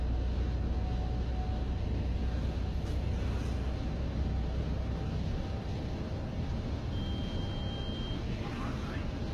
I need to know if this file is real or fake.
real